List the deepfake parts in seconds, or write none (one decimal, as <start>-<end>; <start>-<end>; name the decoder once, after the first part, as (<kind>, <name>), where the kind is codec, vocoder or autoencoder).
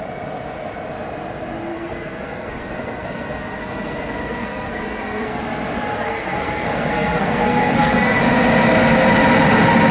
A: 1.7-5.4 (codec, SNAC); 5.9-8.2